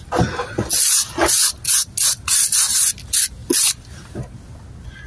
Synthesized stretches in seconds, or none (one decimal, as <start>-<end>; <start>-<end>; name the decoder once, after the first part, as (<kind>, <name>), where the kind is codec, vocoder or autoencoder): none